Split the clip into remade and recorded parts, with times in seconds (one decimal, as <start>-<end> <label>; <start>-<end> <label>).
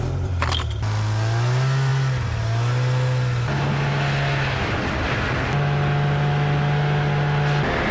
0.0-7.9 recorded